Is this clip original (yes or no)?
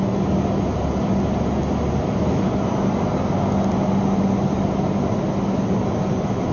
yes